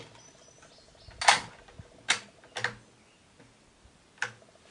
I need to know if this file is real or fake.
real